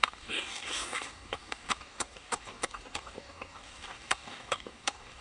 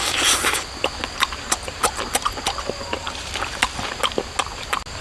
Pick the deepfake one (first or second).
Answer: first